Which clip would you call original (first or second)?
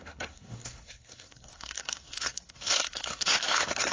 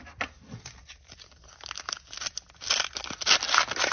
second